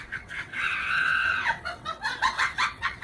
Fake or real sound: fake